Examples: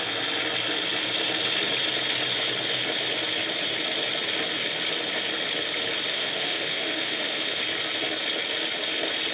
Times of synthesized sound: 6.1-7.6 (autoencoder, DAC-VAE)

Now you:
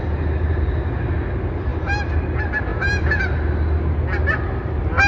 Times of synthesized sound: none

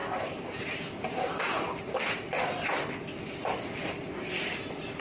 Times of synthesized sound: none

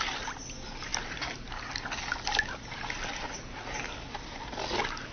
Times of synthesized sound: none

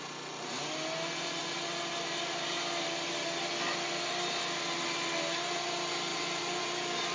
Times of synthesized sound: none